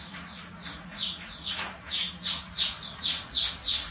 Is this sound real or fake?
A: fake